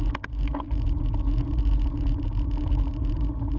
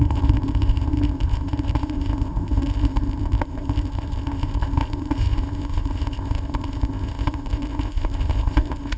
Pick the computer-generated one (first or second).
second